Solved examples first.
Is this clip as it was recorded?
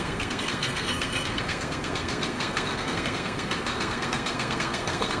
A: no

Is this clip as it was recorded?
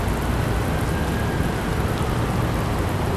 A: yes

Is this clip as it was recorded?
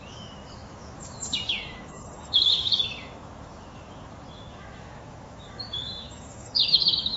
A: no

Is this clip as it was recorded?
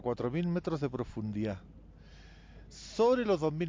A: yes